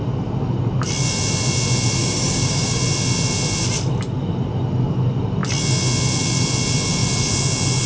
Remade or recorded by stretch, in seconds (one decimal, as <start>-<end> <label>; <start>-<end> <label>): 0.0-2.0 recorded; 2.0-2.8 remade; 2.8-7.9 recorded